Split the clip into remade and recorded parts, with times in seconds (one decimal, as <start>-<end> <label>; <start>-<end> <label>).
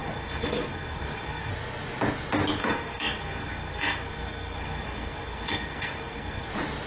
0.0-1.5 remade; 1.5-2.6 recorded; 2.6-6.5 remade; 6.5-6.9 recorded